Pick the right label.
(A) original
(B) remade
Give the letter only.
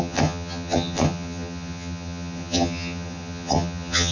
B